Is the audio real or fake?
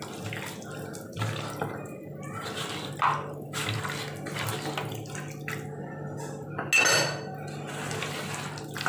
real